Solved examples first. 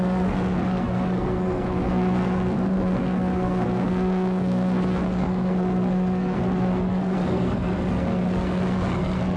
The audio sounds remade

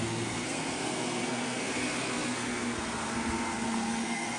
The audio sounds remade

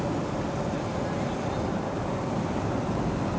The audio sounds recorded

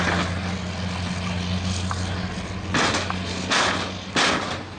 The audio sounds recorded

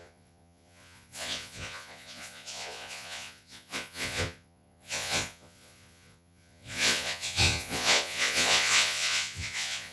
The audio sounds remade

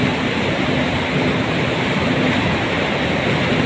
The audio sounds recorded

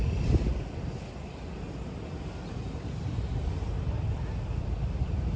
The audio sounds recorded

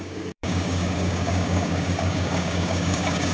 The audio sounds remade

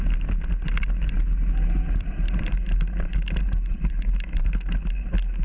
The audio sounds recorded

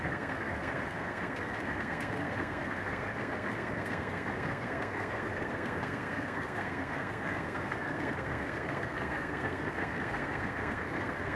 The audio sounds remade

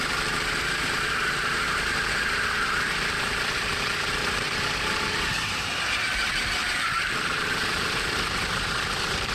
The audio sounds remade